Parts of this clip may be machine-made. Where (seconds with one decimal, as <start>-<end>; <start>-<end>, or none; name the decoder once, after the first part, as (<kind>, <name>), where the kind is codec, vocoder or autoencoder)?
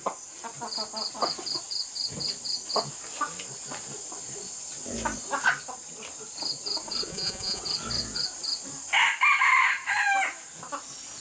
7.1-7.6 (vocoder, Vocos)